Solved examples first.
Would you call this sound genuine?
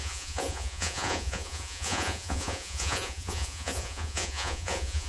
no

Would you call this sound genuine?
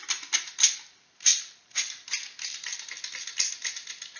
yes